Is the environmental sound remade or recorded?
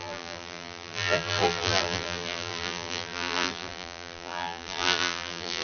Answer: remade